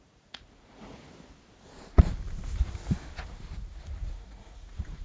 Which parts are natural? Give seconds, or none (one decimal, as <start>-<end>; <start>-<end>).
1.0-4.0